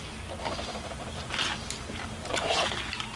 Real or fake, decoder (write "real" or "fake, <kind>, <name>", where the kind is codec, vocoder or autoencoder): real